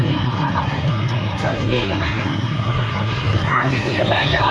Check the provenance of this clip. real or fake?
fake